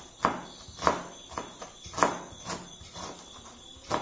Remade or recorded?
recorded